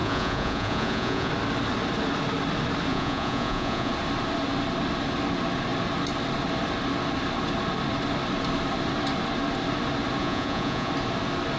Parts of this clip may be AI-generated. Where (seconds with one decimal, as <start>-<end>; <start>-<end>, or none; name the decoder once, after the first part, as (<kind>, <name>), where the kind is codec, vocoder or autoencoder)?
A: 0.0-1.3 (vocoder, Vocos); 2.9-3.9; 10.2-10.9